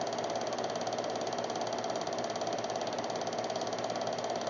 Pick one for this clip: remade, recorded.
recorded